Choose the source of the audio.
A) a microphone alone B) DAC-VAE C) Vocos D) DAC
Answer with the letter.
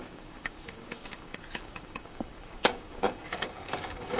D